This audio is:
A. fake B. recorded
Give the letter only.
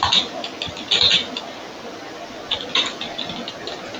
B